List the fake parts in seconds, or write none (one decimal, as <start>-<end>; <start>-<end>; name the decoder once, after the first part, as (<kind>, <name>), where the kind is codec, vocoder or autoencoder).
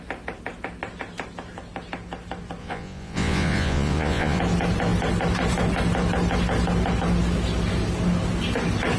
2.6-4.4 (vocoder, Vocos)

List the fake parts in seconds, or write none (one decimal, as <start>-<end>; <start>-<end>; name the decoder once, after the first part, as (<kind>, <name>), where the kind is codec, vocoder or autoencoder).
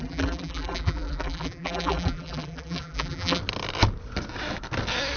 0.0-3.4 (vocoder, BigVGAN v2)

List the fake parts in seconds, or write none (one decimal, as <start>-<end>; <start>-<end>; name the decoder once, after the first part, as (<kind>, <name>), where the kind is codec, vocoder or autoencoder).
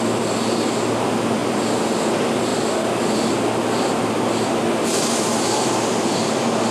none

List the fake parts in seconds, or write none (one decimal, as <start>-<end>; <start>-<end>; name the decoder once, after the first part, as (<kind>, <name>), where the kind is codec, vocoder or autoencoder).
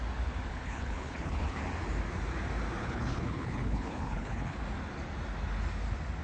0.5-1.6 (codec, HILCodec); 2.8-4.6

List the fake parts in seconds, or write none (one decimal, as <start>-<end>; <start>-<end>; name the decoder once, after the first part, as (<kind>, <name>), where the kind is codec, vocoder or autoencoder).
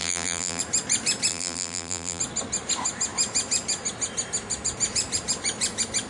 0.0-0.6 (vocoder, BigVGAN v2); 1.3-2.2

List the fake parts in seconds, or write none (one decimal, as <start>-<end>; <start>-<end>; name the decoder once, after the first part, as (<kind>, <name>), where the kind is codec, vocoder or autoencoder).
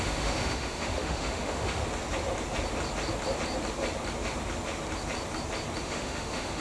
0.0-1.8 (autoencoder, DAC-VAE); 5.8-6.6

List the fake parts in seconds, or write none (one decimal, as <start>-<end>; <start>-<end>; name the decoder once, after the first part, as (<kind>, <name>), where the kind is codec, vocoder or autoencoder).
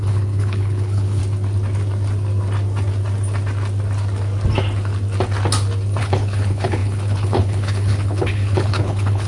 0.0-1.2 (codec, HILCodec); 6.0-9.3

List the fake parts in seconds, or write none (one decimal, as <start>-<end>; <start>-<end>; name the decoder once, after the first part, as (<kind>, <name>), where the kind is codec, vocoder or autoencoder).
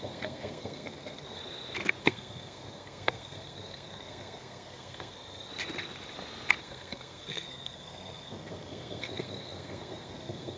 0.0-1.4 (codec, SNAC); 2.0-5.5; 6.6-10.6